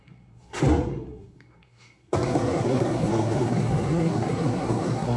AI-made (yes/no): yes